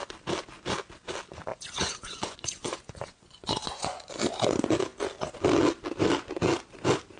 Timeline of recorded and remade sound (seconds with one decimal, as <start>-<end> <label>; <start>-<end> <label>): 0.0-1.5 recorded; 1.5-4.1 remade; 4.1-7.2 recorded